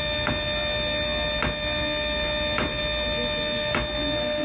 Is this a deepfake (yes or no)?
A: no